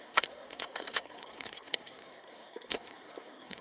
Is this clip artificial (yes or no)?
yes